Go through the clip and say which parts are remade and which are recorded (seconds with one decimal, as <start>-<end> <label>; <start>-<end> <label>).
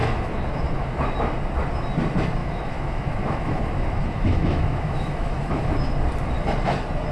0.0-0.9 remade; 0.9-2.4 recorded; 2.4-5.7 remade; 5.7-7.1 recorded